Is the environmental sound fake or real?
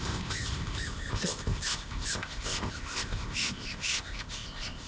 fake